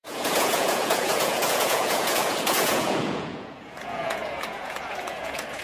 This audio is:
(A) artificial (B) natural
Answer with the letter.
A